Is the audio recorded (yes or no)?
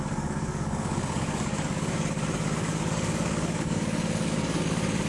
no